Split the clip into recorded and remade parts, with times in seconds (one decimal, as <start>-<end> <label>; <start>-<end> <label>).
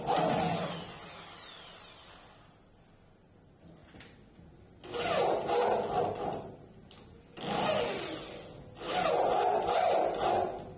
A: 0.0-10.8 recorded